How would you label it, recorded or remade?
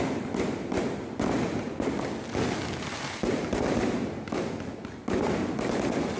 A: recorded